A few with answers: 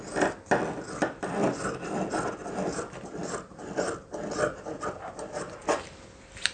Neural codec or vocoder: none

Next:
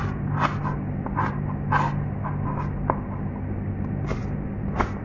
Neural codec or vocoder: none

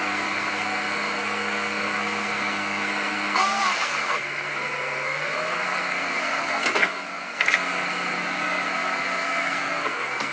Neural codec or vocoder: codec, SNAC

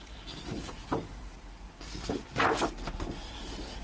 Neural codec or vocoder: none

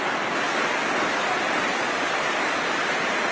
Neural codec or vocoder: none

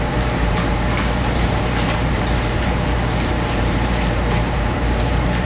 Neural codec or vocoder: vocoder, BigVGAN v2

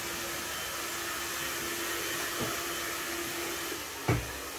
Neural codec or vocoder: none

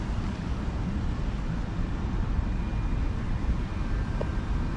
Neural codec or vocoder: none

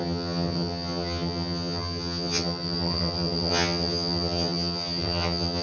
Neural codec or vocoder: vocoder, HiFi-GAN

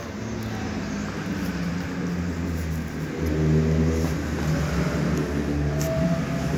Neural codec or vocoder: none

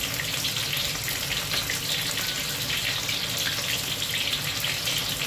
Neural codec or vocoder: none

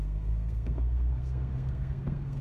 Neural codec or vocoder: codec, SNAC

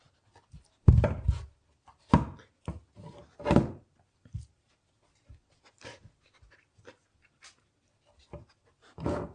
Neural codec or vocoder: none